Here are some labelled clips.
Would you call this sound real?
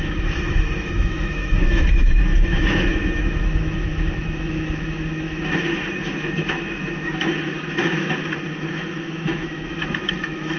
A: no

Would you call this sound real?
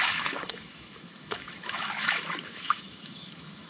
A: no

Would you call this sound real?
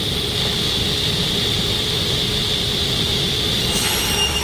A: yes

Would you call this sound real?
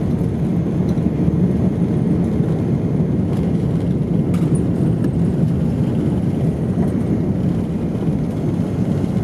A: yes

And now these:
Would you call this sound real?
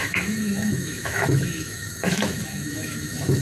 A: no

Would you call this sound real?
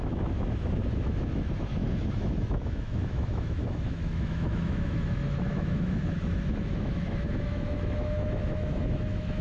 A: no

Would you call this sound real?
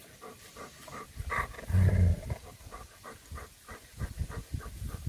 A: yes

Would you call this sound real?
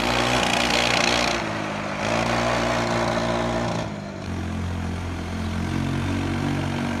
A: yes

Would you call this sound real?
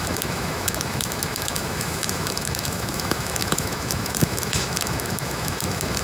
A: no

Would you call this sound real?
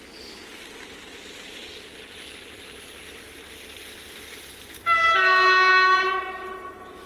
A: yes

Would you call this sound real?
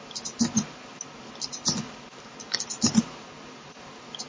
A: yes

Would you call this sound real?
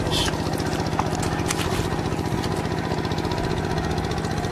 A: yes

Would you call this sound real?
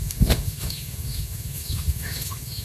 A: no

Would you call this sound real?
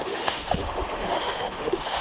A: no